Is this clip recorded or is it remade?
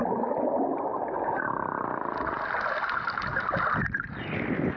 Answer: recorded